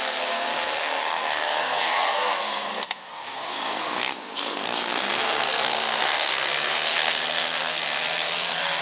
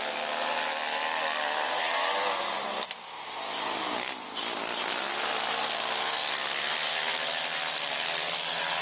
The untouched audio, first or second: second